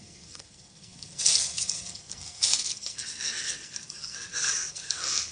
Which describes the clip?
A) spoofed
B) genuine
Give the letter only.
A